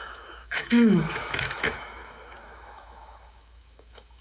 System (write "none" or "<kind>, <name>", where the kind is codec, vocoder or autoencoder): autoencoder, DAC-VAE